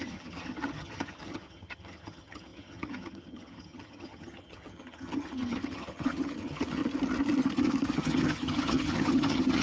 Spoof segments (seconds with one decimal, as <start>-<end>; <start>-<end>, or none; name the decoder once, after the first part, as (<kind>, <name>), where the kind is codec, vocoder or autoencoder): 0.0-6.8 (vocoder, HiFi-GAN); 7.9-9.6